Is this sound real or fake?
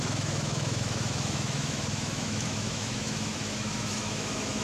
fake